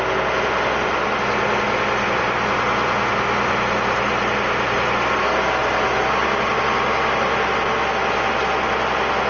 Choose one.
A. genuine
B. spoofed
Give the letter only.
A